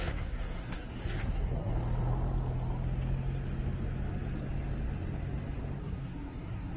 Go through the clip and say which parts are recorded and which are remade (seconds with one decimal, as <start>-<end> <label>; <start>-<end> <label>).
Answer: 0.0-1.7 remade; 1.7-5.8 recorded; 5.8-6.8 remade